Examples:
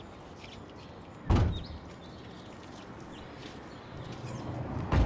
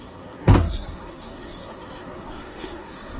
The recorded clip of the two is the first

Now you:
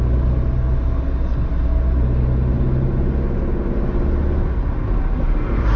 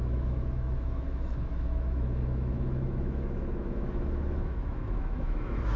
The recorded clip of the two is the first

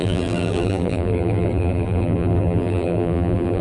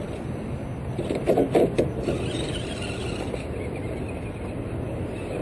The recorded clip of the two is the second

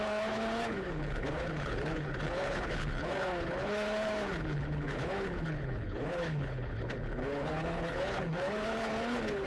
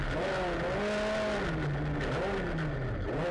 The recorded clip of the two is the second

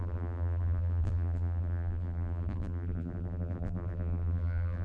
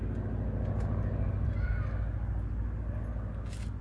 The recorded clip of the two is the second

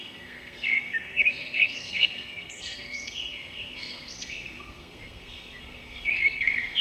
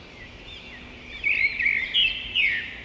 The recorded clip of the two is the second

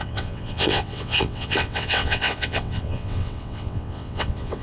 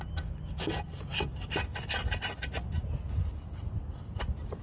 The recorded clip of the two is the second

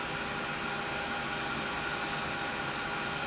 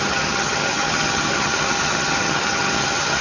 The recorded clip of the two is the first